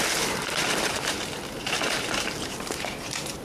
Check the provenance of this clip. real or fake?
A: fake